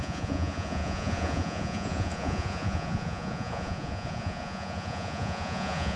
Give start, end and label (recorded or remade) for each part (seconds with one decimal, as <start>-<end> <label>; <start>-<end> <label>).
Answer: 0.0-6.0 remade